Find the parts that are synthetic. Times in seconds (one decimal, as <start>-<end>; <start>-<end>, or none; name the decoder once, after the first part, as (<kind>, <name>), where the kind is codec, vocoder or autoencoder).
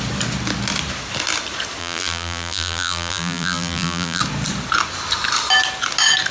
1.8-4.2 (vocoder, BigVGAN v2)